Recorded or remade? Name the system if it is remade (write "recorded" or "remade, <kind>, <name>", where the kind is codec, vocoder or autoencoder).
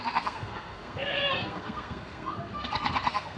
remade, codec, SNAC